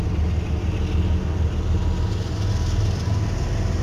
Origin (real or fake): real